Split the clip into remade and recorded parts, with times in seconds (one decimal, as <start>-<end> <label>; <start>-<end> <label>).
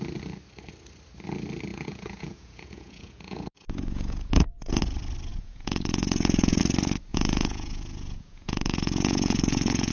0.0-1.7 recorded; 1.7-4.8 remade; 4.8-5.3 recorded; 5.3-6.6 remade; 6.6-7.1 recorded; 7.1-9.9 remade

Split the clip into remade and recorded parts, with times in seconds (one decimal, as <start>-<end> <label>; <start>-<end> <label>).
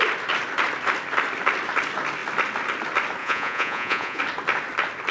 0.0-3.2 recorded; 3.2-4.2 remade; 4.2-5.1 recorded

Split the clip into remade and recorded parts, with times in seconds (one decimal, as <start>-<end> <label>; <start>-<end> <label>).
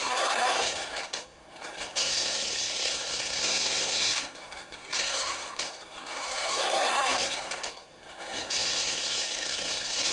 0.0-10.1 remade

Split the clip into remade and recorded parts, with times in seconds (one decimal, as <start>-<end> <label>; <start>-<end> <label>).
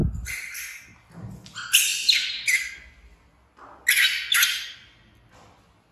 0.0-1.2 recorded; 1.2-1.9 remade; 1.9-5.3 recorded; 5.3-5.9 remade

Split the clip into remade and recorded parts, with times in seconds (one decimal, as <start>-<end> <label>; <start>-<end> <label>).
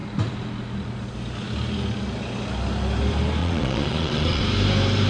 0.0-3.4 recorded; 3.4-4.4 remade; 4.4-5.1 recorded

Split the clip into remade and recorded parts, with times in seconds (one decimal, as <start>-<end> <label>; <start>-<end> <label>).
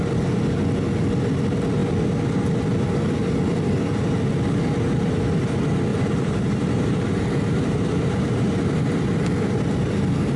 0.0-5.9 recorded; 5.9-8.8 remade; 8.8-10.4 recorded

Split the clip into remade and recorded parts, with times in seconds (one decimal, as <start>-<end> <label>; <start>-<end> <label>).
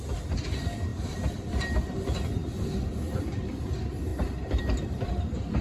0.0-5.6 recorded